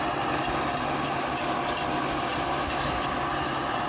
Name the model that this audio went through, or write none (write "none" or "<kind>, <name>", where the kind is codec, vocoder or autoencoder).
none